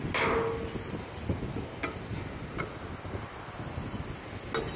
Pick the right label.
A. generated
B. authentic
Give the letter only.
B